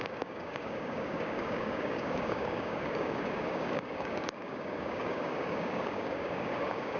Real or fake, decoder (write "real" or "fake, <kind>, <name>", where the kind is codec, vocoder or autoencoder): fake, codec, DAC